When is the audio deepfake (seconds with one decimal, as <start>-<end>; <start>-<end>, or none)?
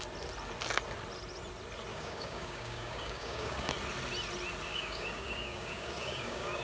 1.9-3.7; 4.7-6.6